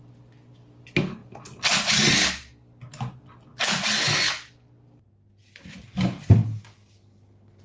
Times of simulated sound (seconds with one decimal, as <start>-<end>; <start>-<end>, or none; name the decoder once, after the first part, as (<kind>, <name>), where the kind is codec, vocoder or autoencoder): none